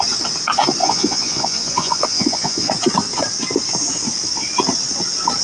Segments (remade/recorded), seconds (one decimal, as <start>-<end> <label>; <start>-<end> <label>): 0.0-0.8 recorded; 0.8-2.7 remade; 2.7-5.4 recorded